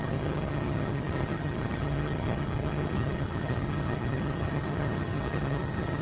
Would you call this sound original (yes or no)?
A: no